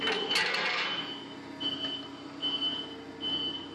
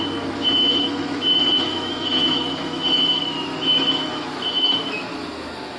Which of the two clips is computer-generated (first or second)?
second